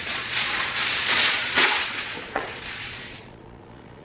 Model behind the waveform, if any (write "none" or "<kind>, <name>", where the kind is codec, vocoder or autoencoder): vocoder, Vocos